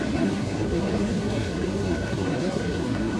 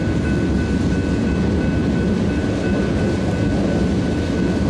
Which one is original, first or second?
second